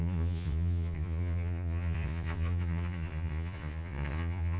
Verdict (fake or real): fake